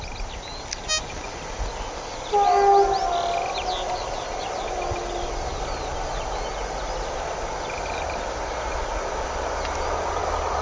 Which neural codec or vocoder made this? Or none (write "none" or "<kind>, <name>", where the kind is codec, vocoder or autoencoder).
none